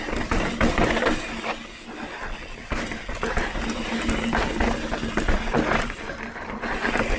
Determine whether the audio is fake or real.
real